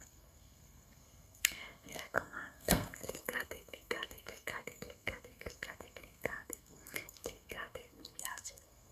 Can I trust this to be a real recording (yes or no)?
no